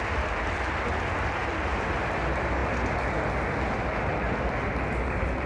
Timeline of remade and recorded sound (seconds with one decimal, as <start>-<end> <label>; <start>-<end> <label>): 0.0-5.5 recorded